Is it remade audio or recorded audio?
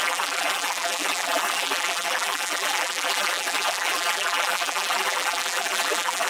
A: remade